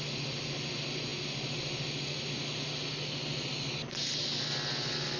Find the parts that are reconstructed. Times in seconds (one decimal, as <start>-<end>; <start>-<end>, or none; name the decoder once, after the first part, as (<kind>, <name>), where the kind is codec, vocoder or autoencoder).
none